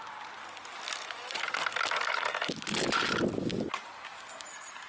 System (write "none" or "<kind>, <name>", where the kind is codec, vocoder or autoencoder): none